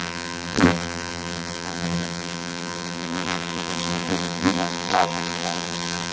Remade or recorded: remade